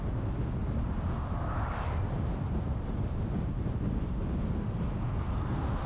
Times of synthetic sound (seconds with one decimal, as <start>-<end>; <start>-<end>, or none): 0.6-4.1